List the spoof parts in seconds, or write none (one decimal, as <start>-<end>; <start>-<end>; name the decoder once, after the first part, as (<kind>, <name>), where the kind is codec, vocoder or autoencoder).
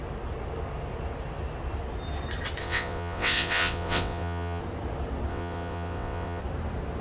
2.6-4.6 (vocoder, WaveNeXt); 5.3-6.4